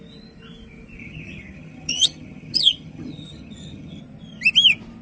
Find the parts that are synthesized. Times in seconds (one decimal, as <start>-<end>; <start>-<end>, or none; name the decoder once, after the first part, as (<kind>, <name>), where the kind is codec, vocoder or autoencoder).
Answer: 1.0-4.0 (vocoder, HiFi-GAN)